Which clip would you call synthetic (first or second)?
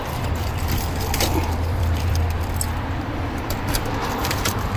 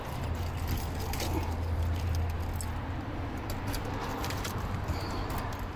first